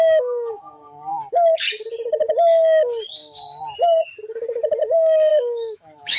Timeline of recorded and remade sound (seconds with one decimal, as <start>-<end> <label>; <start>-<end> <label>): 0.0-1.1 remade; 1.1-4.8 recorded; 4.8-6.2 remade